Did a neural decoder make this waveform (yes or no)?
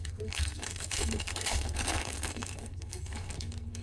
yes